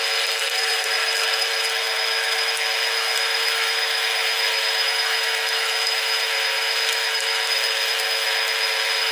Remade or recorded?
remade